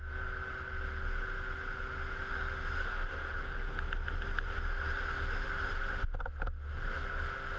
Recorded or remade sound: recorded